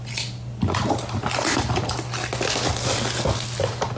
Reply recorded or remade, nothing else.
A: recorded